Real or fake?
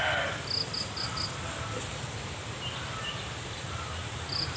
real